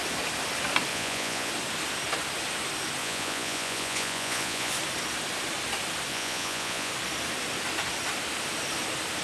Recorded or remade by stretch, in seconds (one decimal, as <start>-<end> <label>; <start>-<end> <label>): 0.0-0.9 recorded; 0.9-1.5 remade; 1.5-3.0 recorded; 3.0-4.7 remade; 4.7-6.1 recorded; 6.1-6.9 remade; 6.9-9.2 recorded

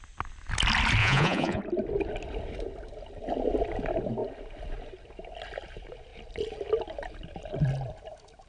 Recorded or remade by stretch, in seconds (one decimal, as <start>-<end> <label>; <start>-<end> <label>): 0.0-1.0 recorded; 1.0-1.6 remade; 1.6-8.5 recorded